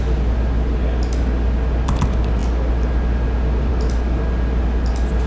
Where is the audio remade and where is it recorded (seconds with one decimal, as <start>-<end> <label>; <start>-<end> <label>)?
0.0-5.3 recorded